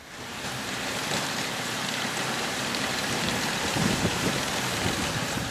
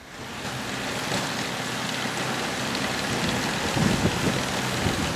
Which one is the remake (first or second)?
first